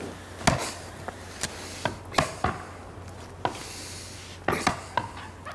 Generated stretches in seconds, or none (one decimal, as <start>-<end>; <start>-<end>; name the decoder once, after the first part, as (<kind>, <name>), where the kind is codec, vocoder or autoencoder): none